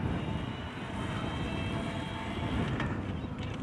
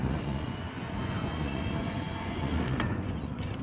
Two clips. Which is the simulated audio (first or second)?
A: second